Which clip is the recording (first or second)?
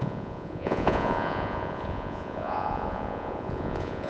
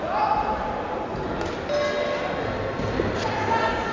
second